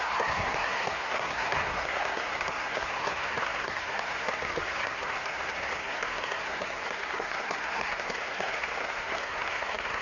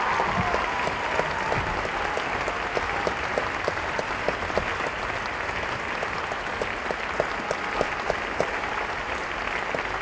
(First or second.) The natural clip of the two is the second